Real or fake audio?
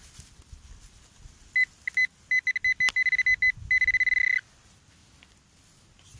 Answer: real